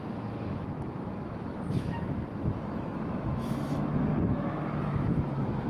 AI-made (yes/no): yes